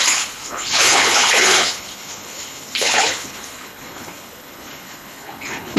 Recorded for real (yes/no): no